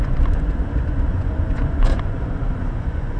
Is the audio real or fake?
fake